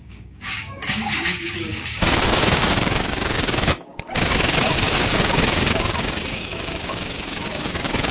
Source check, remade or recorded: remade